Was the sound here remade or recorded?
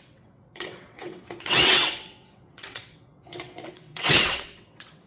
remade